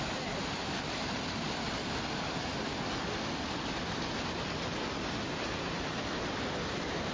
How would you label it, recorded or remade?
recorded